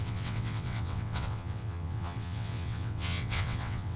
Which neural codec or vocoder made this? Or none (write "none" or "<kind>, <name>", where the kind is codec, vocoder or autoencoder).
vocoder, WaveNeXt